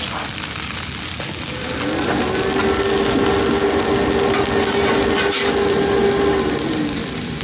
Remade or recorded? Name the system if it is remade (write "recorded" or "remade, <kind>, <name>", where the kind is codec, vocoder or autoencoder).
recorded